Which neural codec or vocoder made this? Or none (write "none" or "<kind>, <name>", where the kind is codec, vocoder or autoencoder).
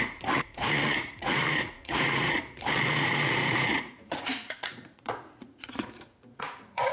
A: vocoder, Vocos